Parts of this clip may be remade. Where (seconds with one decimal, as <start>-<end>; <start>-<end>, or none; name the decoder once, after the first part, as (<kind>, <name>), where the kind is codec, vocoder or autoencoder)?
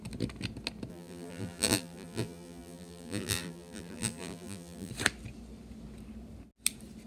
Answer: 0.9-4.9 (vocoder, BigVGAN v2)